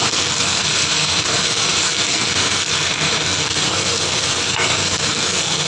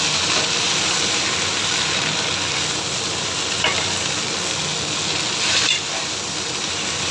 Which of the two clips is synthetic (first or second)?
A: first